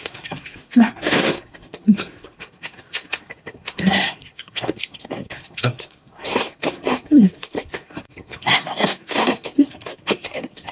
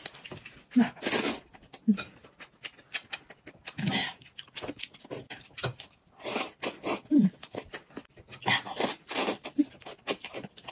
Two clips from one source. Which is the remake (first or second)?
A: first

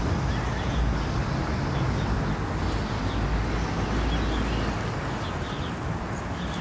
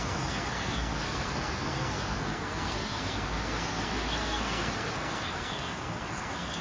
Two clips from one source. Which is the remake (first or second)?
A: second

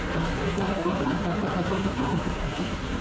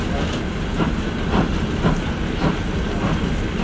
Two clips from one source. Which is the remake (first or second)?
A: first